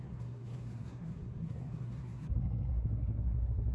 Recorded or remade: remade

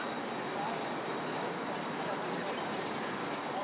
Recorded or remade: recorded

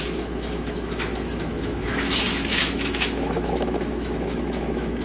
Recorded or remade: remade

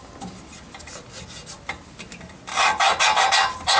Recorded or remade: recorded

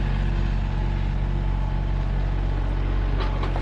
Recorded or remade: recorded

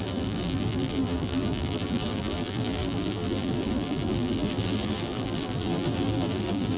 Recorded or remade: remade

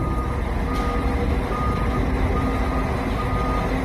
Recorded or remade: recorded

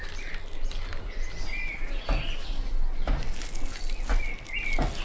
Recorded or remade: recorded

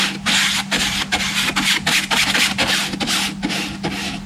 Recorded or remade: recorded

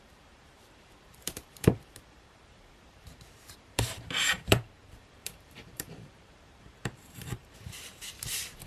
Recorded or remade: remade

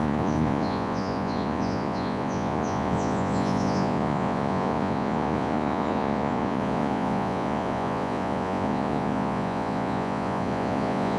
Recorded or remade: remade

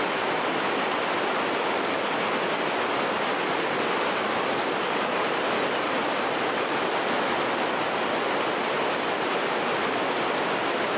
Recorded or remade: recorded